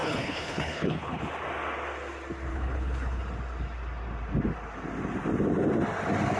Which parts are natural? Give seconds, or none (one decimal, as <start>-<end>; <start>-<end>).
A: 1.2-2.5; 3.2-6.4